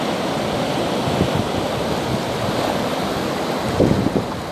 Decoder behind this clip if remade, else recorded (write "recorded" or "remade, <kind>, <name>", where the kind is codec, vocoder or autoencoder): recorded